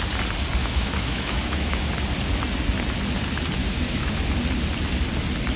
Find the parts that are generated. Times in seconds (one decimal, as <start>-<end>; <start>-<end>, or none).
0.6-1.9; 3.6-4.2